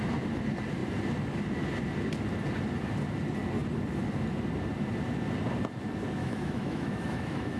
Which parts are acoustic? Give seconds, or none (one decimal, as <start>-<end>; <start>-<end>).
0.0-6.2